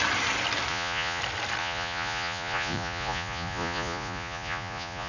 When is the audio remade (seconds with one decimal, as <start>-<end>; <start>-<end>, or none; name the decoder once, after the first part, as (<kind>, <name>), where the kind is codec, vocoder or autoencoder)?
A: 0.7-1.2 (vocoder, Vocos); 1.6-5.1